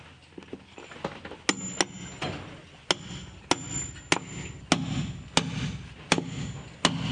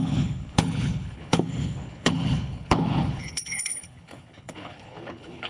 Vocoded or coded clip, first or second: second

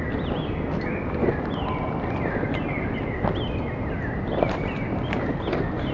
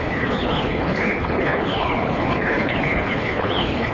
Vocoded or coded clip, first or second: second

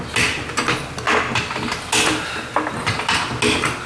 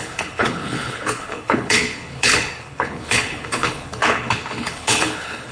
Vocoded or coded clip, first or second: second